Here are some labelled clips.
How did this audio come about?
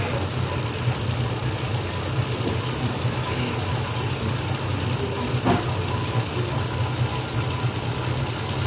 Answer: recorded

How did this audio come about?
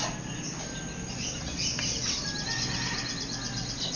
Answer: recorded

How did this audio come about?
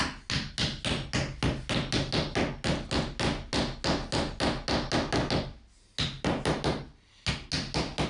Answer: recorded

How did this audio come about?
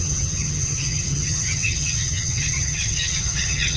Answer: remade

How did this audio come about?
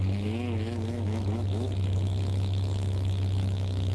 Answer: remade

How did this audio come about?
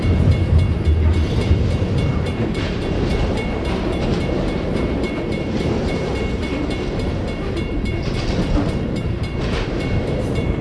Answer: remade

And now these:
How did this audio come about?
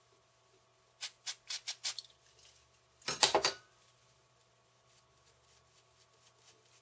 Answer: recorded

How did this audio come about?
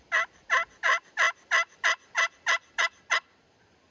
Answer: recorded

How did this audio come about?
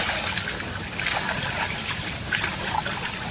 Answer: recorded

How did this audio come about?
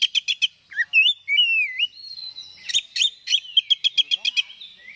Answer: recorded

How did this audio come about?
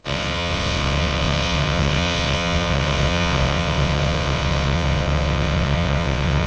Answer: remade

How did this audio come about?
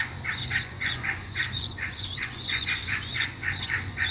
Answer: remade